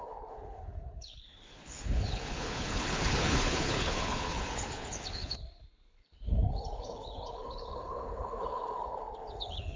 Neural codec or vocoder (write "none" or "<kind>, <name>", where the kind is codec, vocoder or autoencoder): codec, HILCodec